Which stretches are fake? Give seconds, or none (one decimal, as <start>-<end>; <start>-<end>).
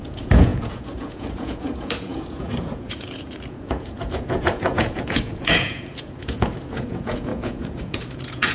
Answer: 0.0-8.5